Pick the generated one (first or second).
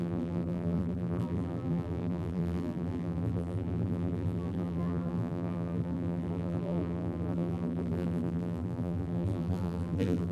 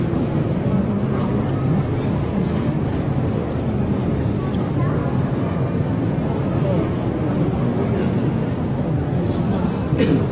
first